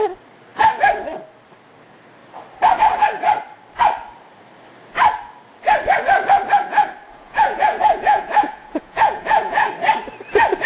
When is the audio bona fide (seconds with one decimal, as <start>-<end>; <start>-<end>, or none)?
0.0-7.1; 9.7-10.7